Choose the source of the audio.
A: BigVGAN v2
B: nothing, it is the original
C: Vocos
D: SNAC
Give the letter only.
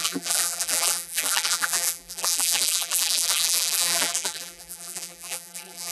A